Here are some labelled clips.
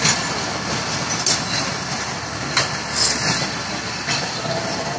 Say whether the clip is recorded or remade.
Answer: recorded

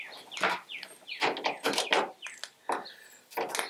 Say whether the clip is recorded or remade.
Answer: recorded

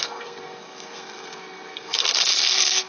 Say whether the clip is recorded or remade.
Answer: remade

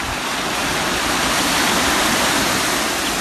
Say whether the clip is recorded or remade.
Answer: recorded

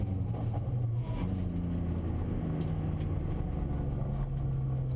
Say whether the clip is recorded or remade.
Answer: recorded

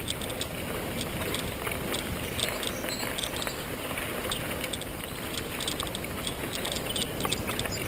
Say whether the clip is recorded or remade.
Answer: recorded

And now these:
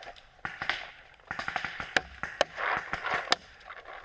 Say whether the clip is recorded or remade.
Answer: recorded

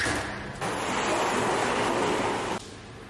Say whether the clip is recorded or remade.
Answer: recorded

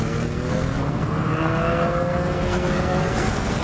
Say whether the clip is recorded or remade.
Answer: remade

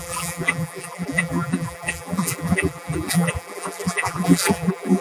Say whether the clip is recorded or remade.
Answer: remade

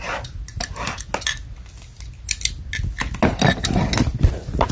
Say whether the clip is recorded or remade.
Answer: recorded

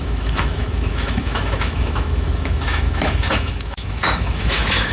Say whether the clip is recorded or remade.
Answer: remade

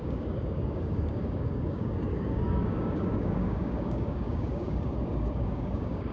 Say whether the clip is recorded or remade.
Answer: remade